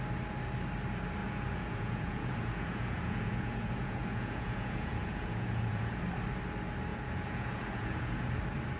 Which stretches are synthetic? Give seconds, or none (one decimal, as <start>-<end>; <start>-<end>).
1.2-6.0; 6.9-8.4